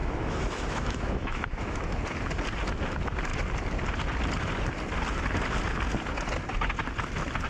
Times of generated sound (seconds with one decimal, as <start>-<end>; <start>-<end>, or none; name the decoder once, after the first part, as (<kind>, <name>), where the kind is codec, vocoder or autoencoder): 0.0-2.0 (autoencoder, DAC-VAE)